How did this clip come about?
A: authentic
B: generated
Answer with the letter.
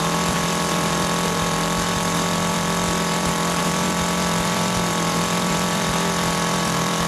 B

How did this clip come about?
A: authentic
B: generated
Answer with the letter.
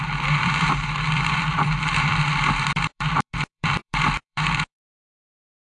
B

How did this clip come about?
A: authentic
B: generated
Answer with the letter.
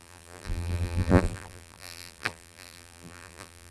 B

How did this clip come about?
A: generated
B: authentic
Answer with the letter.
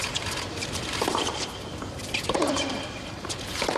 A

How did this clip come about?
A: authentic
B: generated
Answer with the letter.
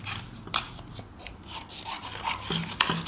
A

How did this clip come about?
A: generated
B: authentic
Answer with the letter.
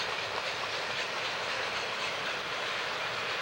A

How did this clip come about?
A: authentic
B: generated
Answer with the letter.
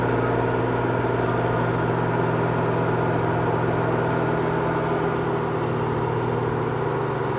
A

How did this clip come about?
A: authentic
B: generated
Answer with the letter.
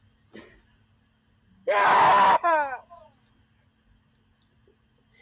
A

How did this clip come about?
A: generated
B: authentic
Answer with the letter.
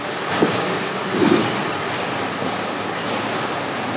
B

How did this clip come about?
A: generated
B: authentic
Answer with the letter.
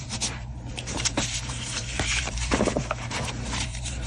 A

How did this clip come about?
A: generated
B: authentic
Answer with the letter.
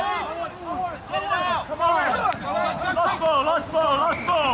B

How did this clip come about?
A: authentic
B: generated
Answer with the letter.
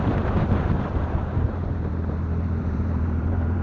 B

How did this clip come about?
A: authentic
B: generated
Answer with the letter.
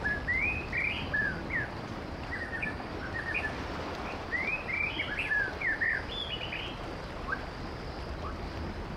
A